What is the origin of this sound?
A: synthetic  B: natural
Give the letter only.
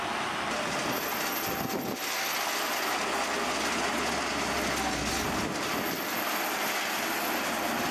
B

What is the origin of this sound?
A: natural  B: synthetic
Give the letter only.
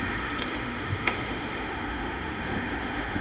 B